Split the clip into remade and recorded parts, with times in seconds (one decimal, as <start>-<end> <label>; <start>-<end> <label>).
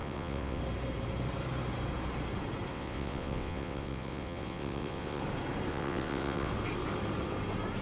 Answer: 0.0-0.6 remade; 0.6-2.7 recorded; 2.7-5.2 remade; 5.2-5.7 recorded; 5.7-6.5 remade; 6.5-7.8 recorded